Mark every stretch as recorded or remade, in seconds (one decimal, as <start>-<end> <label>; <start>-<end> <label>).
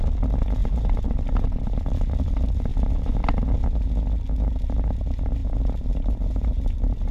0.0-0.6 recorded; 0.6-1.9 remade; 1.9-5.4 recorded; 5.4-7.1 remade